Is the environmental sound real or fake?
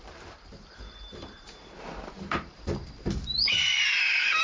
fake